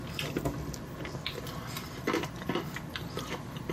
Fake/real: real